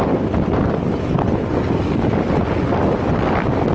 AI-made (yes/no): no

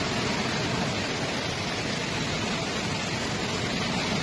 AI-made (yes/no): no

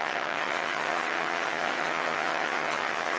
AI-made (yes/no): yes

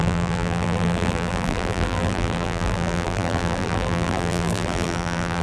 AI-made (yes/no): yes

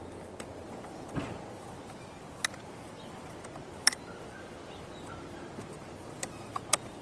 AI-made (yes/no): yes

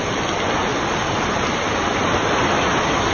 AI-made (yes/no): no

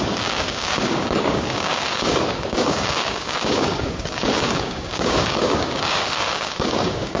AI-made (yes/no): yes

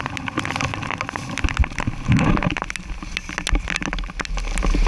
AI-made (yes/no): no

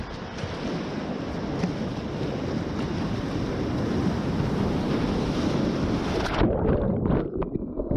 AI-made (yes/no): no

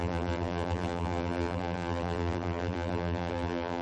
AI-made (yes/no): yes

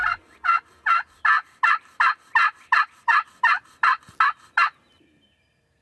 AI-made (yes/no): no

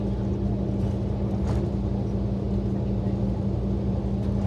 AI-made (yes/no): no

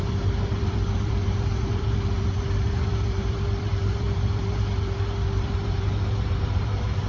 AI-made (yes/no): yes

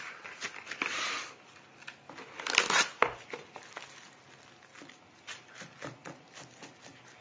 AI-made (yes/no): no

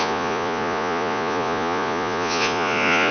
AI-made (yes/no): yes